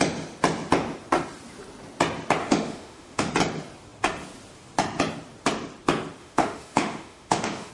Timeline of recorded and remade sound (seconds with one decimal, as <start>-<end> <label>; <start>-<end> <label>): 0.0-2.4 recorded; 2.4-3.3 remade; 3.3-6.2 recorded; 6.2-7.7 remade